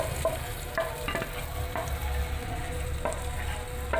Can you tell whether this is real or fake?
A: real